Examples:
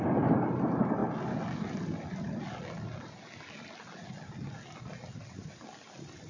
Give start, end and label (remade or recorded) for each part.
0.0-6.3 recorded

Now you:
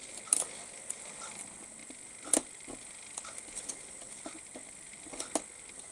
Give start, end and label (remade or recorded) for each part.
0.0-5.9 recorded